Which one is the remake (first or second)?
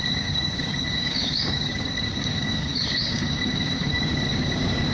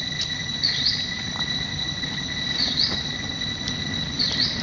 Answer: first